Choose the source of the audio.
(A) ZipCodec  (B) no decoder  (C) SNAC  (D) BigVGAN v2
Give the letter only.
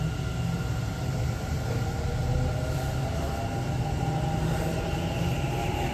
B